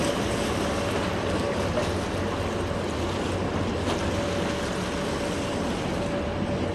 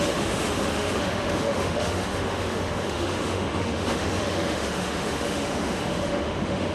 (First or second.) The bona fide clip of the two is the first